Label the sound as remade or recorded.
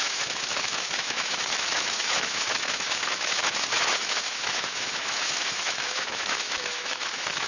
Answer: remade